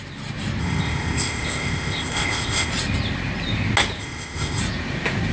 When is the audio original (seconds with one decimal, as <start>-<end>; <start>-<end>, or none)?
0.0-0.6; 2.7-4.0; 4.6-5.3